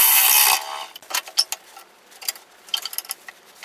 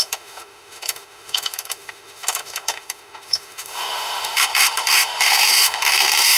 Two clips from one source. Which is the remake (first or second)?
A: second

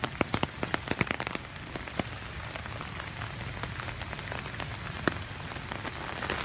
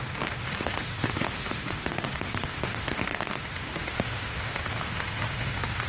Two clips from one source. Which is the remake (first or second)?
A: second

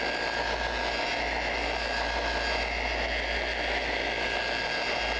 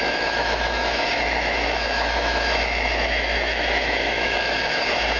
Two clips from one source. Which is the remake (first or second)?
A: second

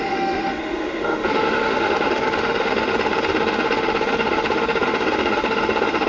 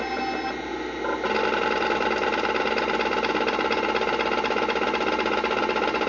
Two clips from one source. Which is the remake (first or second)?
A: first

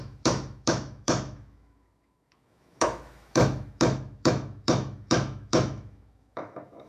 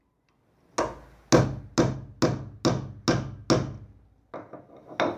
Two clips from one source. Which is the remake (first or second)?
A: first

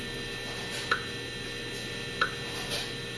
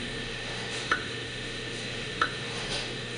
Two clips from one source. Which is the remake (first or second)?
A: second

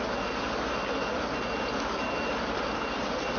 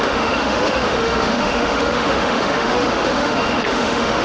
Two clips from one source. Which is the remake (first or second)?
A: second